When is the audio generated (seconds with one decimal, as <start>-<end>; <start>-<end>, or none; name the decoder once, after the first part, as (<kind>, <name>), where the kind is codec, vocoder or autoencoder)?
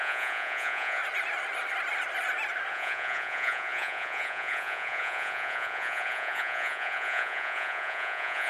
0.0-1.0 (vocoder, Vocos); 2.7-8.5